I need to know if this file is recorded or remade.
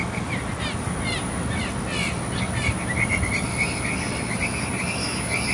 recorded